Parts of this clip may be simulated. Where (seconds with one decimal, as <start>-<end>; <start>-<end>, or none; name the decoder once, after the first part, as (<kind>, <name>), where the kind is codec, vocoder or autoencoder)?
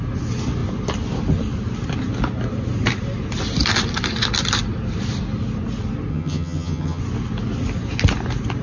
6.1-7.0 (vocoder, HiFi-GAN)